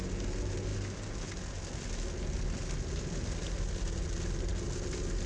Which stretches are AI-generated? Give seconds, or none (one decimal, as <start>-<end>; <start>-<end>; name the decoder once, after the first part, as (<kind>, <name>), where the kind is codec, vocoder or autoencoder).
none